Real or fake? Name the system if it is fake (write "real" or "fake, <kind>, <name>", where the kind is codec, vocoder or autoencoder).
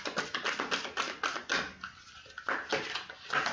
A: real